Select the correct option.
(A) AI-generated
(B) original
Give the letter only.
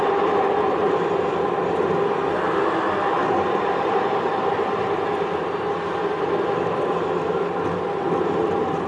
B